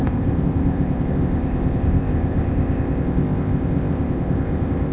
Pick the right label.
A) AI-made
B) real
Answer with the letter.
A